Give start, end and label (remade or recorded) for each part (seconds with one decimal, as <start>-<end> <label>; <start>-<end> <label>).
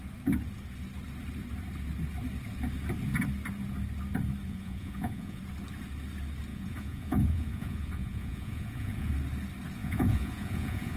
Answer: 0.0-4.4 recorded; 4.4-5.4 remade; 5.4-6.5 recorded; 6.5-9.1 remade; 9.1-9.8 recorded; 9.8-11.0 remade